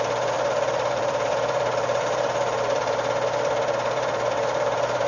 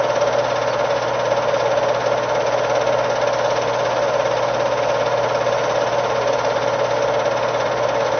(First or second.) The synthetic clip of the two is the first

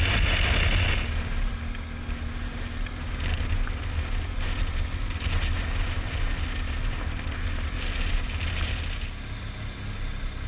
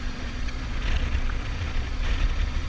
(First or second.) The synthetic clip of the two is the second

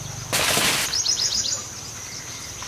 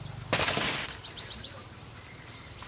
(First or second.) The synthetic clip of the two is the second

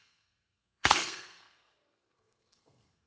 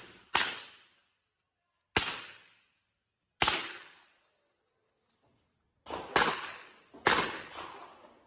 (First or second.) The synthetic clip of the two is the first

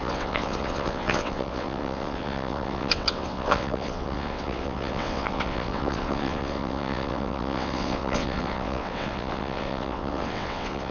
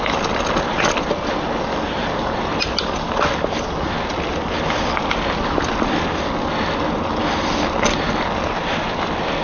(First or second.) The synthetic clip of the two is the first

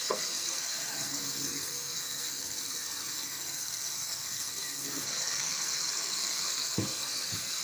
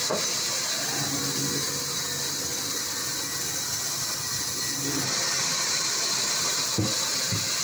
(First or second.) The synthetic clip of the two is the first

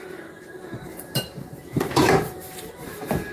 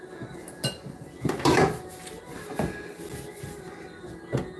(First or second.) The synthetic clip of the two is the first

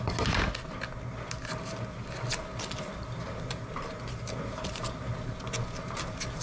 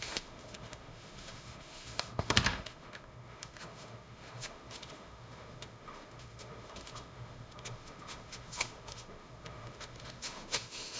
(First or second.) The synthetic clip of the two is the second